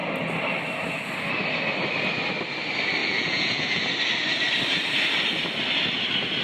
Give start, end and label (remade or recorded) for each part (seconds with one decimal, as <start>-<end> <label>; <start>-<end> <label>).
0.0-3.0 recorded; 3.0-3.8 remade; 3.8-6.4 recorded